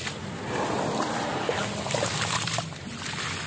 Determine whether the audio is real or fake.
real